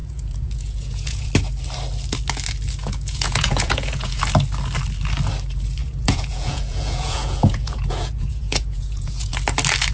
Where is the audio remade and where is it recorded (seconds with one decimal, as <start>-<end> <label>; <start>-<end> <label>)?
0.0-1.3 remade; 1.3-2.8 recorded; 2.8-4.2 remade; 4.2-5.8 recorded; 5.8-9.3 remade; 9.3-9.9 recorded